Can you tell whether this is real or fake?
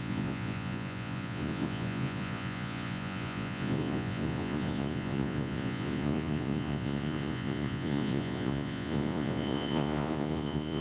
fake